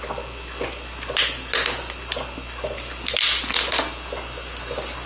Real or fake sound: real